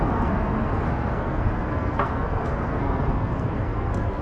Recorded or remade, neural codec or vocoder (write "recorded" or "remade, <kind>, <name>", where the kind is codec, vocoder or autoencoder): remade, codec, SNAC